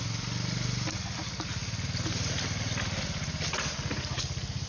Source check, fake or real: real